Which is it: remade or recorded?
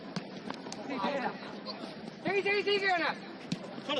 recorded